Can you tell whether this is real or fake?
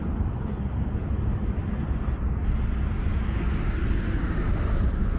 real